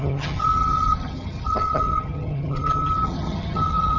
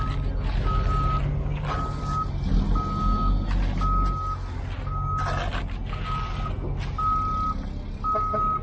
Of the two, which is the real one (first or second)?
second